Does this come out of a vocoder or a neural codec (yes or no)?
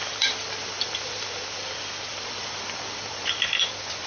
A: yes